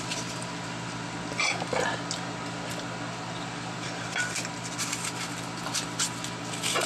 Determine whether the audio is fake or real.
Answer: real